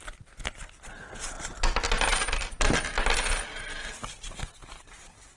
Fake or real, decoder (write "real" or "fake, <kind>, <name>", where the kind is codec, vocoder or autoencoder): real